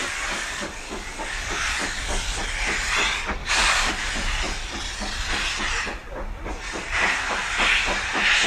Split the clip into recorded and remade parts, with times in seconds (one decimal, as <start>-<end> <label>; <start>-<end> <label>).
0.0-2.4 remade; 2.4-3.4 recorded; 3.4-4.1 remade; 4.1-8.5 recorded